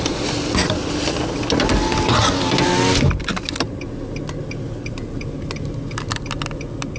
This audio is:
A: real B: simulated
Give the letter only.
A